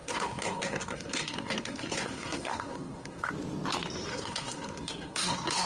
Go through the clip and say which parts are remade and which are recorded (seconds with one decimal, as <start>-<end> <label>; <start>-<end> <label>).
0.0-3.3 remade; 3.3-4.1 recorded; 4.1-5.7 remade